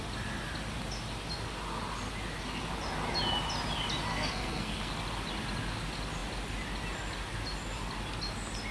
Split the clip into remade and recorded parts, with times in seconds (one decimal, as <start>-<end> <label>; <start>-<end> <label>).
0.0-4.1 recorded; 4.1-4.9 remade; 4.9-8.7 recorded

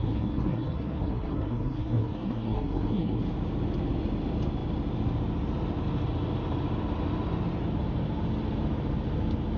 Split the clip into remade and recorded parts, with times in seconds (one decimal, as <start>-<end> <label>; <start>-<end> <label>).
0.0-3.2 remade; 3.2-9.6 recorded